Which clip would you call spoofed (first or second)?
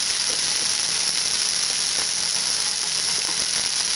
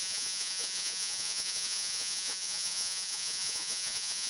second